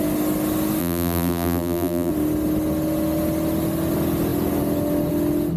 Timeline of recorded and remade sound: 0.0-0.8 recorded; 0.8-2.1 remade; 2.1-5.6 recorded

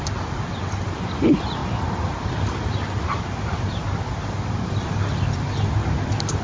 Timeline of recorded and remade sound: 0.0-6.4 recorded

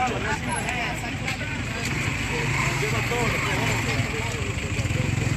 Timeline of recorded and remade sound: 0.0-2.8 remade; 2.8-4.9 recorded; 4.9-5.4 remade

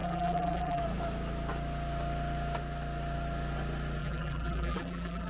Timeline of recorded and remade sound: 0.0-0.8 remade; 0.8-4.0 recorded; 4.0-5.3 remade

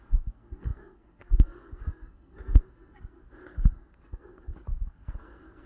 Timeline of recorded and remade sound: 0.0-5.7 remade

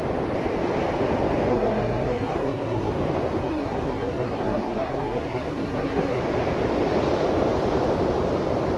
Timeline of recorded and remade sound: 0.0-1.5 recorded; 1.5-2.9 remade; 2.9-3.4 recorded; 3.4-6.2 remade; 6.2-8.8 recorded

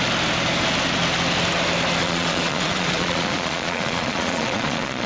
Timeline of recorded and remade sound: 0.0-2.0 recorded; 2.0-5.1 remade

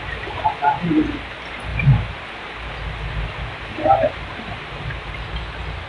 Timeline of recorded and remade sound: 0.0-5.9 recorded